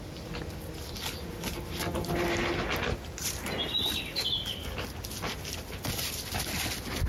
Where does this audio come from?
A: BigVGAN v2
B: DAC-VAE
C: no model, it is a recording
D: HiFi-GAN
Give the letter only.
C